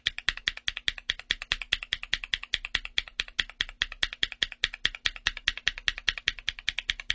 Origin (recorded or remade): recorded